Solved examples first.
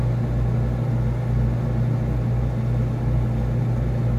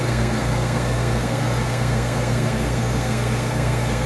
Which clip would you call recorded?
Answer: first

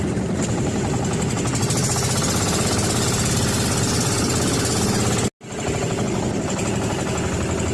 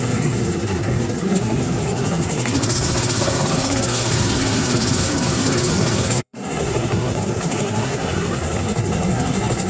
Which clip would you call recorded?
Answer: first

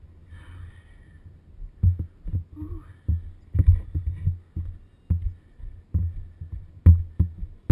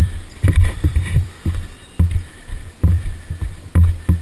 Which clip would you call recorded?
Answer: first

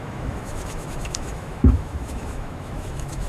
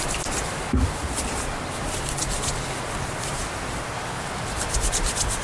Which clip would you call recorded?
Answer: second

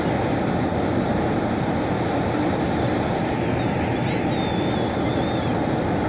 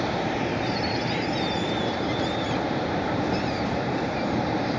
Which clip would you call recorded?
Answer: first